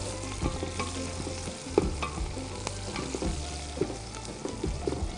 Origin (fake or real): real